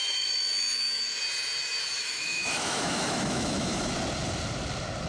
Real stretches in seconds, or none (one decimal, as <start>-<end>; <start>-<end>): 1.2-2.0; 3.9-5.1